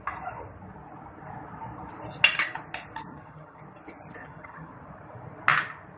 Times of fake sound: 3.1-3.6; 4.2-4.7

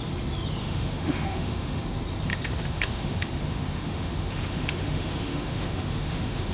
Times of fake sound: 0.6-1.8; 2.3-6.5